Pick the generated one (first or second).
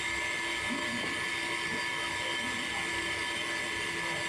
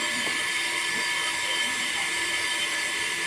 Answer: second